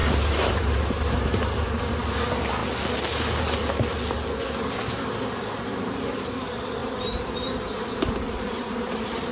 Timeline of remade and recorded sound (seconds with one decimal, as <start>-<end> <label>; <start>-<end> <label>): 0.0-2.6 remade; 2.6-5.2 recorded; 5.2-9.3 remade